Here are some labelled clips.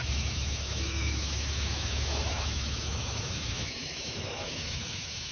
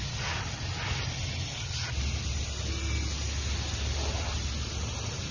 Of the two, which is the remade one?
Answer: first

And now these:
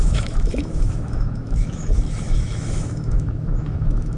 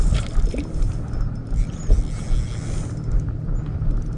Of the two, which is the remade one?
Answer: first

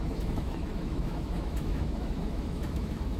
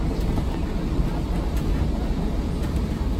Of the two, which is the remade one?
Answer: first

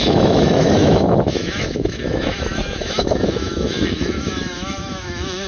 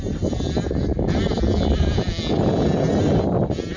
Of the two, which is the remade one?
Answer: first